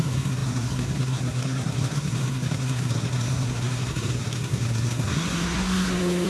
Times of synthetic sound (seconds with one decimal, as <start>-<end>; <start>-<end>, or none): 0.0-6.3